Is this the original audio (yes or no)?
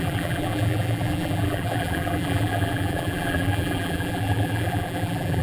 no